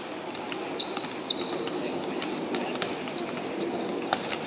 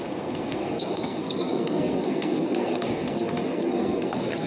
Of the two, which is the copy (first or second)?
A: second